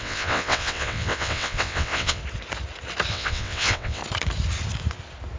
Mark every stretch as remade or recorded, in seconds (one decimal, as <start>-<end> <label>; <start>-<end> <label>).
0.0-2.2 remade; 2.2-3.1 recorded; 3.1-4.0 remade; 4.0-5.4 recorded